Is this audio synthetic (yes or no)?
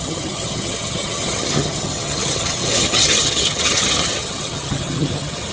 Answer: yes